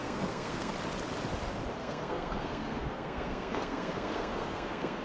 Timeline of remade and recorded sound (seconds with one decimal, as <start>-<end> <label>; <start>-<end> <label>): 0.0-0.7 remade; 0.7-1.8 recorded; 1.8-5.0 remade